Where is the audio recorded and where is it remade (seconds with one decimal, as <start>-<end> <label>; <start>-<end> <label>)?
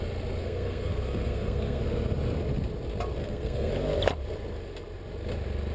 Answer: 0.0-0.4 recorded; 0.4-1.8 remade; 1.8-3.2 recorded; 3.2-3.7 remade; 3.7-5.7 recorded